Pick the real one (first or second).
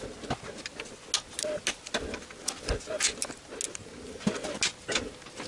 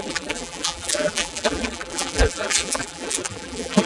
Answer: first